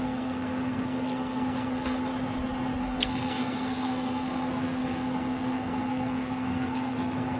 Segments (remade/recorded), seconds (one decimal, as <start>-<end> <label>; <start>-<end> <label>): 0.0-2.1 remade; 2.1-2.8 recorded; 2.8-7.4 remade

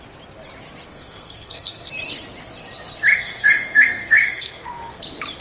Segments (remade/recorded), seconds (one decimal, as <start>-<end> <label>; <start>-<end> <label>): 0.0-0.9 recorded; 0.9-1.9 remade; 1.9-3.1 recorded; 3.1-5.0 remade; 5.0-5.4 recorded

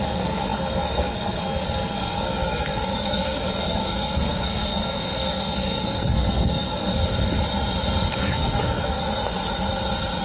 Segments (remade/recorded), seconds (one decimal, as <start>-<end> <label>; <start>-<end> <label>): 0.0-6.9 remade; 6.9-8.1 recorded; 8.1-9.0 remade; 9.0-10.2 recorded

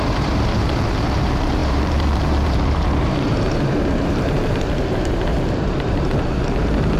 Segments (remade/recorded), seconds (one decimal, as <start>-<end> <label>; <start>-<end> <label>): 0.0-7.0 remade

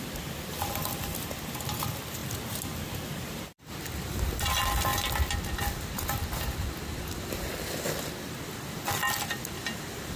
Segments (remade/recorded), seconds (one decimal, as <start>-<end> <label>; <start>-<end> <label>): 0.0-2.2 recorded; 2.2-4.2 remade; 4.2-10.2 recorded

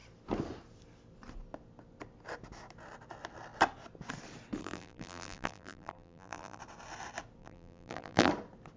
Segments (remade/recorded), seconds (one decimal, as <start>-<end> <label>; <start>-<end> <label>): 0.0-4.6 recorded; 4.6-6.6 remade; 6.6-7.4 recorded; 7.4-8.3 remade; 8.3-8.8 recorded

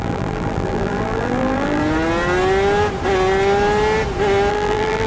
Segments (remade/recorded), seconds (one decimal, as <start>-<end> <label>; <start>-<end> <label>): 0.0-1.8 remade; 1.8-4.5 recorded; 4.5-5.1 remade

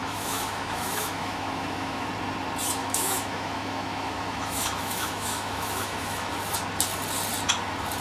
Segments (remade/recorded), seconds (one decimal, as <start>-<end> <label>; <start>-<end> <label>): 0.0-2.1 remade; 2.1-2.8 recorded; 2.8-6.3 remade; 6.3-8.0 recorded